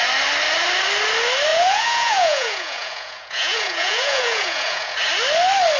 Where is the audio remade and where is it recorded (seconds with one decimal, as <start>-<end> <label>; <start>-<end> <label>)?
0.0-1.5 recorded; 1.5-5.0 remade; 5.0-5.8 recorded